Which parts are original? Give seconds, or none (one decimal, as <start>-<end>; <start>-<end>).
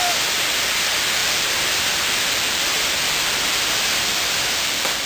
none